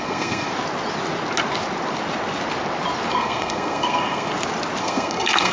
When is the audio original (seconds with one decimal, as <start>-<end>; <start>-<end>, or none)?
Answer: 0.5-3.1; 4.3-4.8